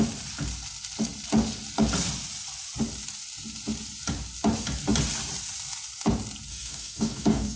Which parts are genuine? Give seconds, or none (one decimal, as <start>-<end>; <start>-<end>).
0.0-6.5

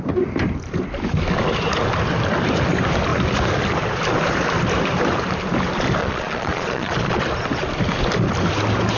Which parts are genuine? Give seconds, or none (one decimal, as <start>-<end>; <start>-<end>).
0.0-6.0; 7.2-9.0

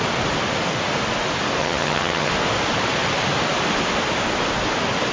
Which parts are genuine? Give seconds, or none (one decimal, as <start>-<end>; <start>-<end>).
0.0-1.6; 2.3-5.1

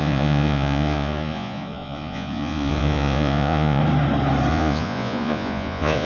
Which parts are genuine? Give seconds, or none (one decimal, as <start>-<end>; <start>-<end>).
3.8-4.5

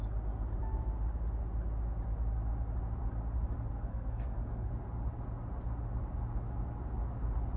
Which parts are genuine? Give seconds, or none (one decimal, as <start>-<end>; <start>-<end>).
0.0-3.9; 4.7-7.6

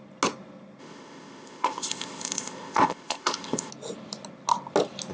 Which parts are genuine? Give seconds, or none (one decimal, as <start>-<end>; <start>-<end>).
0.0-0.8; 3.7-5.1

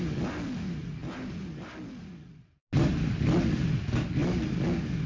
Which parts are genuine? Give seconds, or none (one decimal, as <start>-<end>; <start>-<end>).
0.0-5.1